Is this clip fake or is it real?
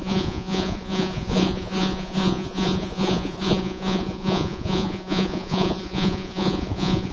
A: fake